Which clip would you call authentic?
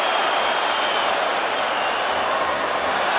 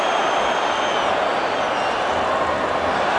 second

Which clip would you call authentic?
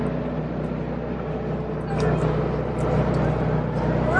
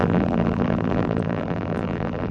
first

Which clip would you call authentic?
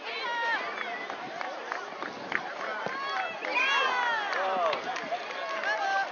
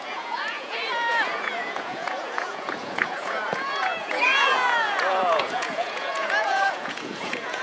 first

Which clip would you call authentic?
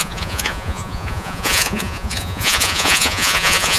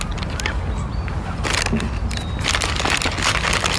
second